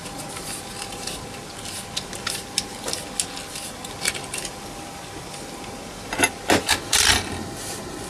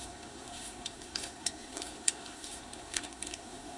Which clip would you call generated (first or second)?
second